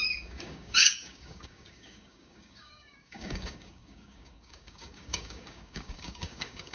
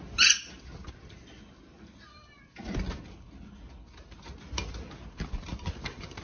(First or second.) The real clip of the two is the second